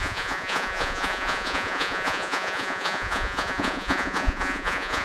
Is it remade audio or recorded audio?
remade